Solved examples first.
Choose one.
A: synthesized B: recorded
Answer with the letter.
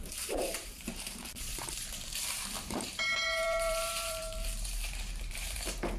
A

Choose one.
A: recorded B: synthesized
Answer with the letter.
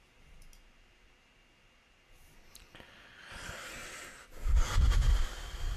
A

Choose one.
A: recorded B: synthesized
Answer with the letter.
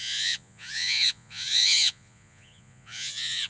B